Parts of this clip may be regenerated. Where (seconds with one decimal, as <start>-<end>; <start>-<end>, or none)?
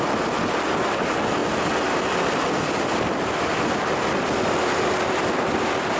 none